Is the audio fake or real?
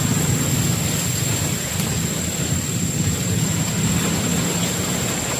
real